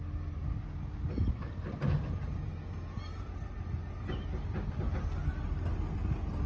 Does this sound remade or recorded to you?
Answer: recorded